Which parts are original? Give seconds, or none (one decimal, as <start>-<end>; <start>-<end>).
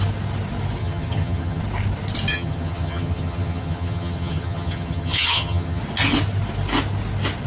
0.0-0.8; 1.6-2.3; 5.8-7.5